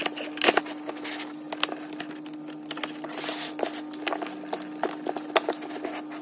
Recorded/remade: recorded